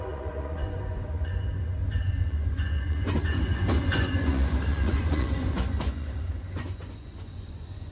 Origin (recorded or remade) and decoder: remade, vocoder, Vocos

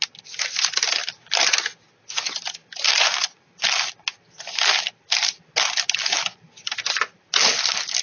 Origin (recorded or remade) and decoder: recorded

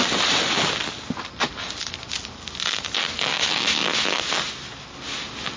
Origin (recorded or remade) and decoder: recorded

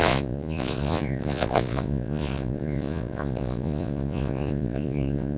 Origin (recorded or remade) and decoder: remade, vocoder, Vocos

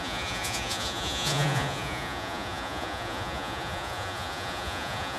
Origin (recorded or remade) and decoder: remade, vocoder, Vocos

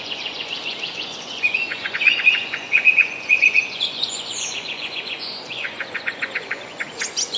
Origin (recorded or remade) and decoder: remade, vocoder, Vocos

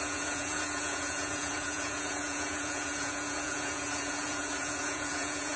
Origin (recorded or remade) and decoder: remade, vocoder, Vocos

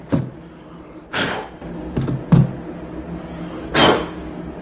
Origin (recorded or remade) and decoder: recorded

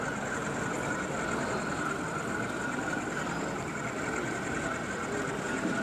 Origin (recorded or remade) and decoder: recorded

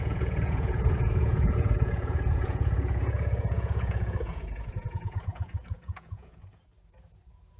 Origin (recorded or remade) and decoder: remade, vocoder, Vocos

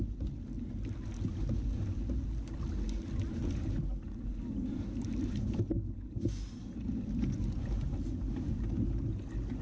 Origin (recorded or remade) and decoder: recorded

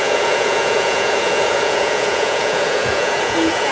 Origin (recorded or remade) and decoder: remade, vocoder, Vocos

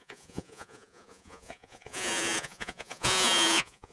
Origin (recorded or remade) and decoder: remade, vocoder, Vocos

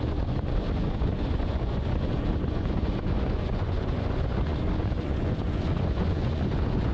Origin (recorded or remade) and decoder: remade, vocoder, Vocos